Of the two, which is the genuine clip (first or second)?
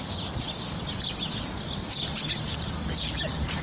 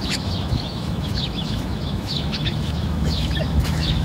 first